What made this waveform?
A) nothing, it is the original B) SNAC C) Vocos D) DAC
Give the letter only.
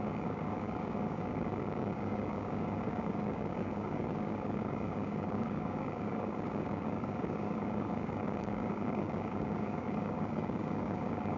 D